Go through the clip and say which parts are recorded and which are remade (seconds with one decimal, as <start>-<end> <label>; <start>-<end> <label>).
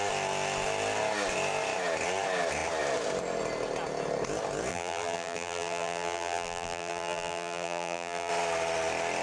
0.0-4.7 recorded; 4.7-8.3 remade; 8.3-9.2 recorded